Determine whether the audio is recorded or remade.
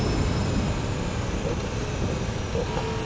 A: recorded